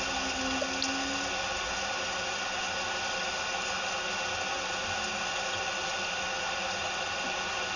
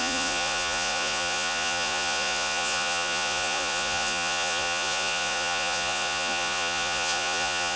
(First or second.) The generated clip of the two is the second